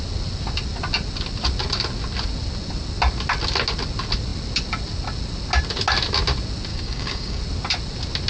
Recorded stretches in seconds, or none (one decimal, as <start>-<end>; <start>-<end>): 0.0-6.7; 7.4-8.3